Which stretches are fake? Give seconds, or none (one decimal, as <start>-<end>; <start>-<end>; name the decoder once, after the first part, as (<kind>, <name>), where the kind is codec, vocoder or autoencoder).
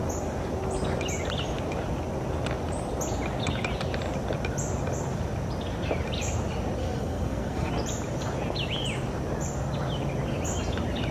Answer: 6.8-7.7 (codec, SNAC)